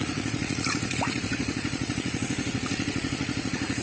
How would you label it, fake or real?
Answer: fake